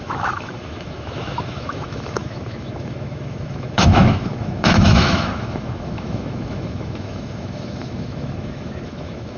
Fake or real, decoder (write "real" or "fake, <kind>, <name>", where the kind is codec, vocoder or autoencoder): fake, autoencoder, DAC-VAE